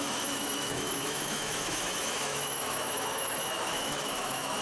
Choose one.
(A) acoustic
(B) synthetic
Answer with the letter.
B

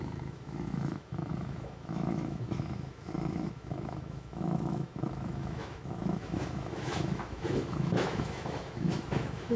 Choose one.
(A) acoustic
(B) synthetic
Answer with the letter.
B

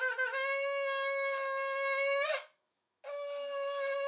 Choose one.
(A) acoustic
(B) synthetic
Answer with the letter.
B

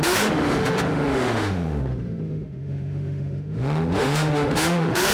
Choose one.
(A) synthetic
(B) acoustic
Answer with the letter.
A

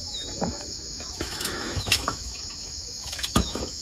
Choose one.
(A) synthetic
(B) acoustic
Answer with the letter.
A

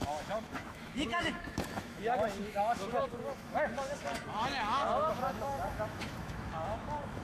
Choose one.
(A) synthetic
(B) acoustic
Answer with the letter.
A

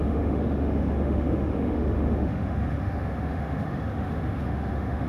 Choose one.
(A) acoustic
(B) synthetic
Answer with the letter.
B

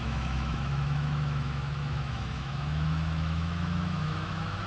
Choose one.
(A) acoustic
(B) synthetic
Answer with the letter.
B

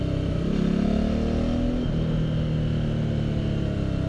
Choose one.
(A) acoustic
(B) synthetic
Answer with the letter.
A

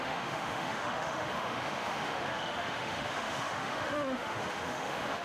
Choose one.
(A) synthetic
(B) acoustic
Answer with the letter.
A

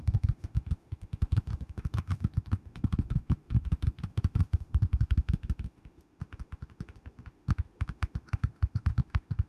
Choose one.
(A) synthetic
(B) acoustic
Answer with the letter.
A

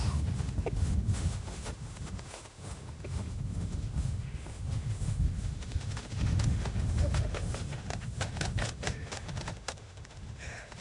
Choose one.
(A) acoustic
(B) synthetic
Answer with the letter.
B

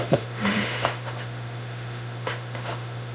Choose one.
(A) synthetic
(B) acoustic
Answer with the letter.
A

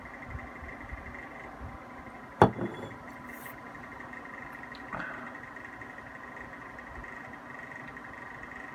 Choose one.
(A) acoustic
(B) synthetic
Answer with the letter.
A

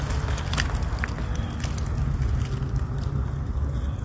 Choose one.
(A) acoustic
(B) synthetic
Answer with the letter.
A